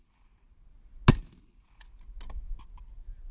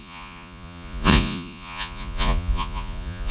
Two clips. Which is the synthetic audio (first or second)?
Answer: second